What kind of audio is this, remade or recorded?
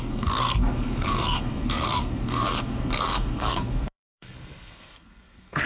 remade